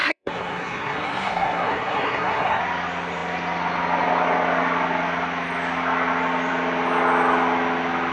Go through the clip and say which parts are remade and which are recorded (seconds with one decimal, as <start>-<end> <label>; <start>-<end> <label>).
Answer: 0.0-2.6 remade; 2.6-8.1 recorded